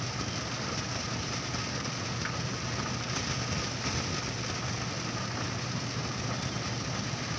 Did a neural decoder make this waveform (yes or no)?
no